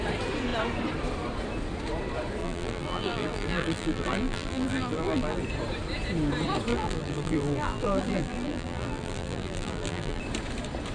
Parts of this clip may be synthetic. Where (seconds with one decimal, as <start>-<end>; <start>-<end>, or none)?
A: 2.4-5.4; 6.7-10.2